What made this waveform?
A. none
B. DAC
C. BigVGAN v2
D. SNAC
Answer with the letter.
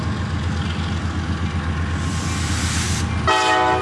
A